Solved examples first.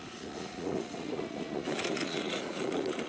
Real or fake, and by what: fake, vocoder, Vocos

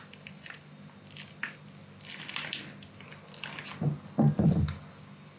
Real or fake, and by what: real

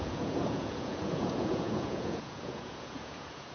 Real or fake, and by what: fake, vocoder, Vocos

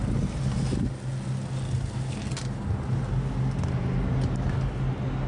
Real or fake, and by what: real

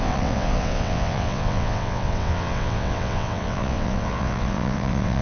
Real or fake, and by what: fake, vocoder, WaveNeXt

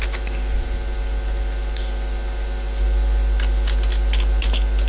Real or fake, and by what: real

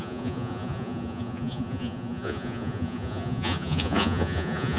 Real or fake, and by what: fake, vocoder, Vocos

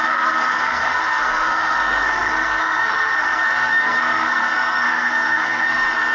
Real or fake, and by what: fake, codec, SNAC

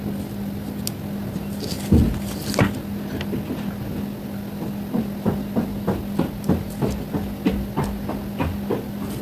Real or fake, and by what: real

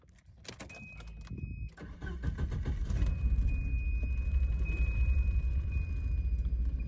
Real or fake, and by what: real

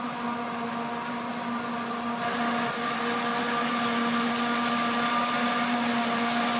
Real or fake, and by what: real